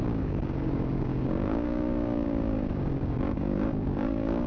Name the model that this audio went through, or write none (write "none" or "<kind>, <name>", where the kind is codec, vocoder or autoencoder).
codec, DAC